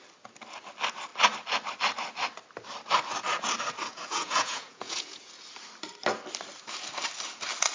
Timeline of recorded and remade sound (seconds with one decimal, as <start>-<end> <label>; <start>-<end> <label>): 0.0-3.9 recorded; 3.9-5.3 remade; 5.3-7.7 recorded